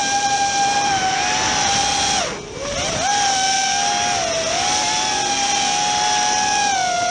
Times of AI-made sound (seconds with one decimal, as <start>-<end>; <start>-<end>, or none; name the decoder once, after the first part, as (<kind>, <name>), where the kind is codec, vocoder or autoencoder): 0.0-0.9 (vocoder, BigVGAN v2)